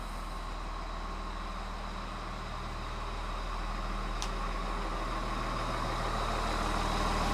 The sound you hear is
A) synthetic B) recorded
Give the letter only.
B